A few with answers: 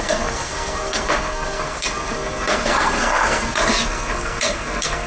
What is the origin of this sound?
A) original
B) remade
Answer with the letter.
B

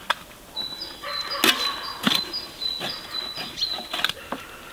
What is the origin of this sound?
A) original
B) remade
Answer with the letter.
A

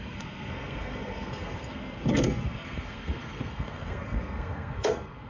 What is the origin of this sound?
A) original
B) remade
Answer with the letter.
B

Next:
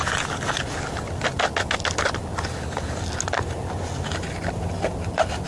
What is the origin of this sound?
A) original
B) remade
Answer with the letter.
A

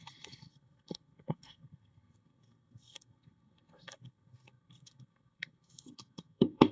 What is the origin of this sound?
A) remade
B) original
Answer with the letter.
A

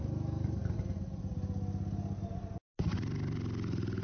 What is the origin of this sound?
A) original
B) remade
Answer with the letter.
A